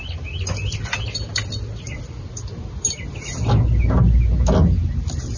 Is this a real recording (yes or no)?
yes